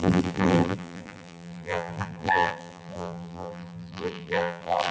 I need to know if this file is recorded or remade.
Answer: remade